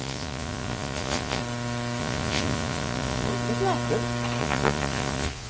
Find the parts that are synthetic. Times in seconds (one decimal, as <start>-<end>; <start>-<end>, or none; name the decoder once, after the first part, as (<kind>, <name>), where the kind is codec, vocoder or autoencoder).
0.0-1.4 (vocoder, Vocos); 2.0-3.3; 4.4-5.5